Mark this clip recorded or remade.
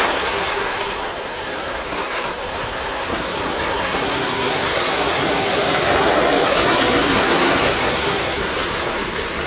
remade